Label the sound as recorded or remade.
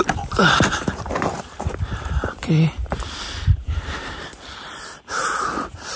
remade